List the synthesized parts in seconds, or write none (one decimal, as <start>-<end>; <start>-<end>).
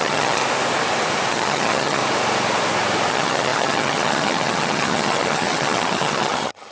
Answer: 0.0-0.4; 1.3-2.0; 3.1-6.7